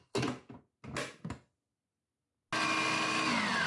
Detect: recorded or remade recorded